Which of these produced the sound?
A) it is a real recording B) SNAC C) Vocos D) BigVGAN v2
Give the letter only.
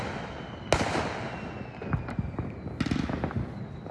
A